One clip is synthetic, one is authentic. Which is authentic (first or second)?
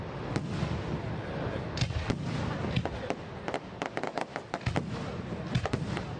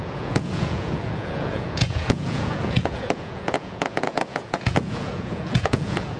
first